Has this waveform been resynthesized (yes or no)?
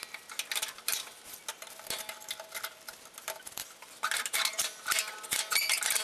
no